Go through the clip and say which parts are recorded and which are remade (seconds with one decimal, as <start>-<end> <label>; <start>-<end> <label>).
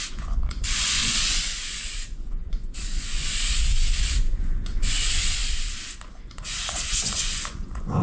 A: 0.0-5.4 remade; 5.4-6.2 recorded; 6.2-8.0 remade